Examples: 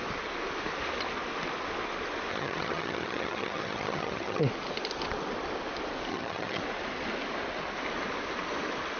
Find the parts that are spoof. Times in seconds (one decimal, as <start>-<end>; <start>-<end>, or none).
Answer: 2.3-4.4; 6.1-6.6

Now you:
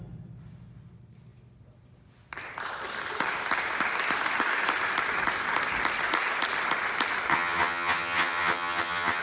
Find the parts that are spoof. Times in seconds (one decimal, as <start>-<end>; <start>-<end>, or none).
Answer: 7.3-9.2

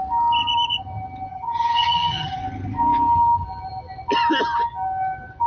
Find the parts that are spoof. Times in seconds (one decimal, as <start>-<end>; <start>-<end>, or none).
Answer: 1.3-2.4

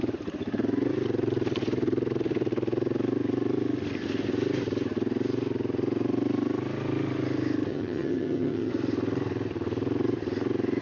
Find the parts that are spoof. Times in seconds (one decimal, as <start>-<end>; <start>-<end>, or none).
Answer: 7.7-8.7

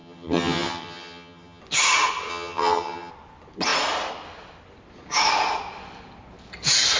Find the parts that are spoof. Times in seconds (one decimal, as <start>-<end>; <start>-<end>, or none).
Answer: 0.0-1.6; 2.3-3.1